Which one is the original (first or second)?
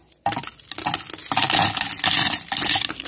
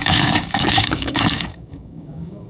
first